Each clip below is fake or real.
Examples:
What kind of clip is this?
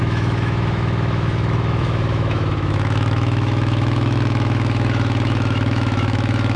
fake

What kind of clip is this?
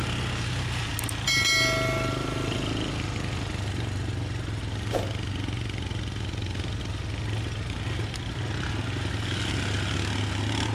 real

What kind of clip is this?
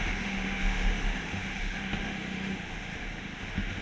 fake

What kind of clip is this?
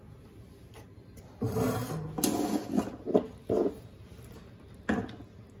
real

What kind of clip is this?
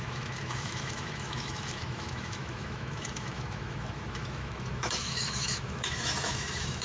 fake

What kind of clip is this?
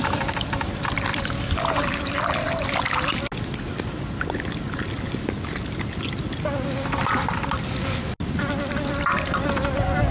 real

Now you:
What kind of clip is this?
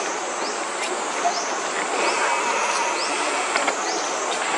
real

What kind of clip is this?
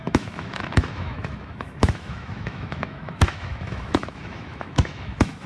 fake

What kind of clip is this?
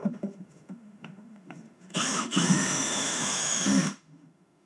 fake